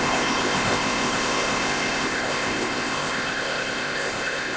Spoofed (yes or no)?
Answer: yes